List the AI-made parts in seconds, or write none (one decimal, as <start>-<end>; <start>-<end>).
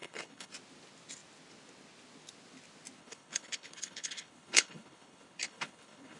0.0-0.5; 3.0-6.2